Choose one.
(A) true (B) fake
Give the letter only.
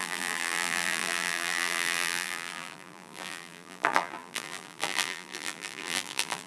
B